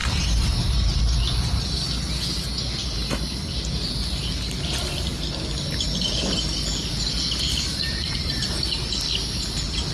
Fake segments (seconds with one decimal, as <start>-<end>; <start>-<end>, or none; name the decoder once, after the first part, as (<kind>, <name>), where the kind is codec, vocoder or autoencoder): 0.0-1.0 (vocoder, BigVGAN v2); 7.7-8.4